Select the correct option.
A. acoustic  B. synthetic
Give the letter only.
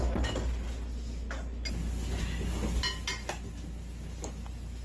A